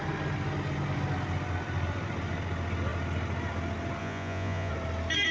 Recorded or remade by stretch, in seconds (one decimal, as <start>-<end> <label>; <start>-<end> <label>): 0.0-4.0 recorded; 4.0-4.7 remade; 4.7-5.3 recorded